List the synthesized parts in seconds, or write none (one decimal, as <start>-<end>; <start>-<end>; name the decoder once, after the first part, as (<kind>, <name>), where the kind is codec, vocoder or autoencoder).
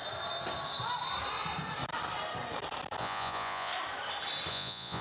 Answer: 3.0-3.7 (vocoder, Vocos); 4.5-5.0